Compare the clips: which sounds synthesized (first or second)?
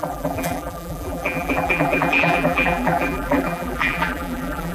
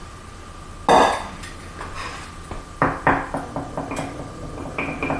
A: first